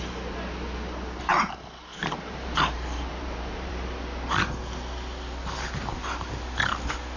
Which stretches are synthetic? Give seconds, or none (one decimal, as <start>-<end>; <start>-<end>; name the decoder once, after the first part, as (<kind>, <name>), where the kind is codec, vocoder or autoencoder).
1.9-3.7 (vocoder, BigVGAN v2)